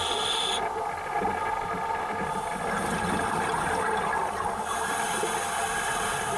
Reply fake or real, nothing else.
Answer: real